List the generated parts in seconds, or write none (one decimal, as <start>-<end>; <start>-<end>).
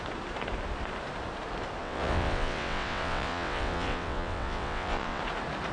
1.8-5.2